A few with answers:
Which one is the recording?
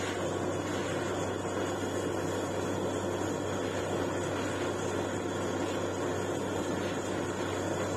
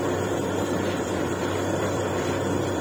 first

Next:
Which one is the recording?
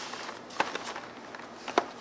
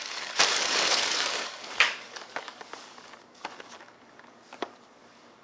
first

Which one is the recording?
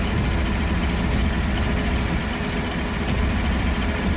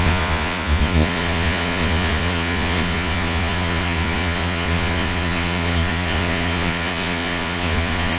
first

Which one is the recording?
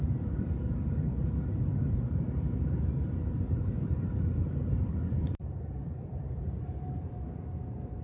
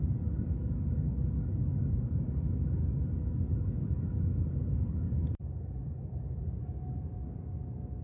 second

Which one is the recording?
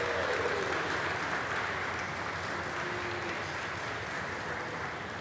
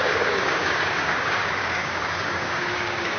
first